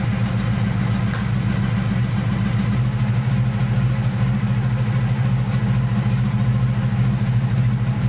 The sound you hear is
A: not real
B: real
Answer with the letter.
B